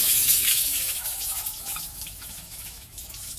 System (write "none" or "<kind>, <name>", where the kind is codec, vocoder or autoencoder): autoencoder, DAC-VAE